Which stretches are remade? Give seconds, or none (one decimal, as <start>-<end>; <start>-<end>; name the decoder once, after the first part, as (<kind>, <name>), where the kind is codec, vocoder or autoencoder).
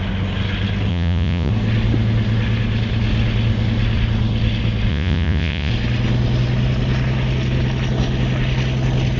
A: 0.9-1.5 (vocoder, Vocos); 4.9-5.7